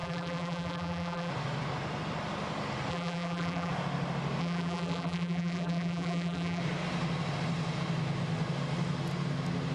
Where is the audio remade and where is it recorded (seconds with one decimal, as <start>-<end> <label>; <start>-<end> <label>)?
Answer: 0.0-1.3 remade; 1.3-2.9 recorded; 2.9-3.7 remade; 3.7-4.4 recorded; 4.4-6.6 remade; 6.6-9.7 recorded